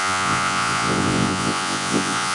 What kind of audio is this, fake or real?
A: fake